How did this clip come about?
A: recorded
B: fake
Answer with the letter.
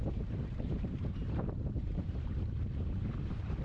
B